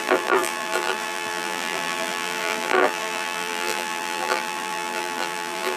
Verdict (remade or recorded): remade